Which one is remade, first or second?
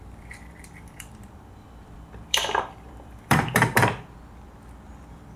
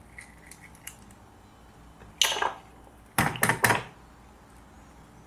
first